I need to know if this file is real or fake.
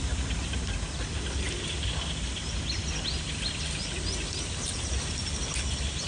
real